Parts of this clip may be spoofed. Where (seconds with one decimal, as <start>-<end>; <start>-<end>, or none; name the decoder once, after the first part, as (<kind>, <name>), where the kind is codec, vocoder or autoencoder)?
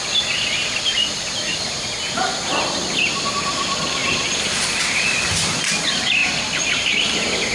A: none